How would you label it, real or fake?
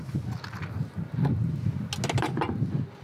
real